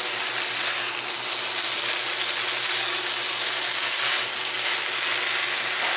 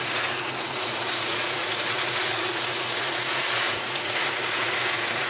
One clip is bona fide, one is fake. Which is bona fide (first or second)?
first